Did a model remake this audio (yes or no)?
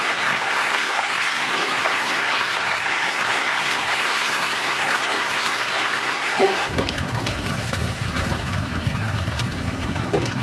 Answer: yes